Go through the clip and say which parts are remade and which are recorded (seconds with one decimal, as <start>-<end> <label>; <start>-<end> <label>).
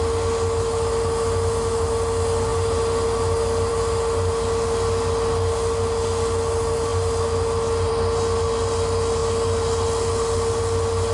0.0-11.1 recorded